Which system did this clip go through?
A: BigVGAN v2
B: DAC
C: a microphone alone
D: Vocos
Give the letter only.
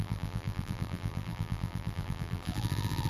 A